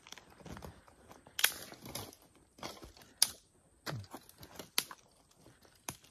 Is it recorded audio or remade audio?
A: recorded